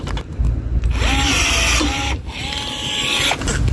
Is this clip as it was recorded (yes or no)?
yes